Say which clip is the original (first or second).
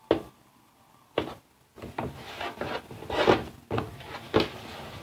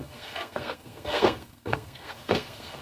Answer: first